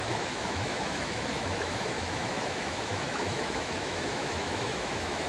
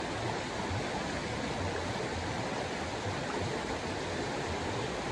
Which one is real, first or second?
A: second